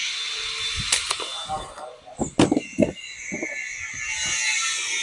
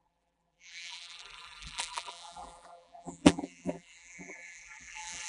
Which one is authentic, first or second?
first